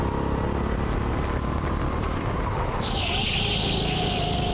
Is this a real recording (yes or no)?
yes